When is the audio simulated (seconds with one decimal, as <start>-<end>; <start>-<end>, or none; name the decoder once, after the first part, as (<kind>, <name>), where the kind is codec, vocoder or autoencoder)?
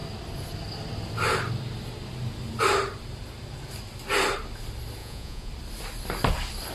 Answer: 5.0-5.5 (vocoder, Vocos)